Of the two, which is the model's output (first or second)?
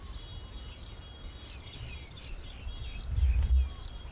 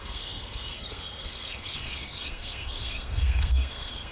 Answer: second